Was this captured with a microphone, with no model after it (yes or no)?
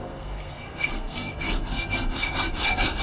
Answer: no